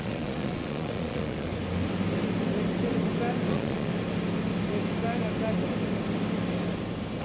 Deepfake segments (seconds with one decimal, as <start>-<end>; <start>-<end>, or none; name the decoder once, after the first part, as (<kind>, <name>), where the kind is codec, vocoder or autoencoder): 0.0-1.5 (vocoder, Vocos); 3.5-3.9